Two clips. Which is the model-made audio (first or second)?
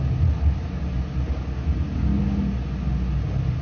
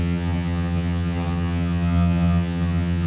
second